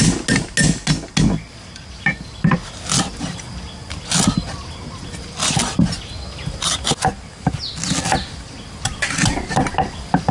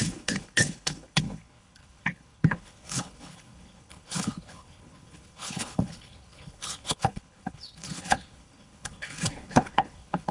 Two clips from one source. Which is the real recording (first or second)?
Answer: first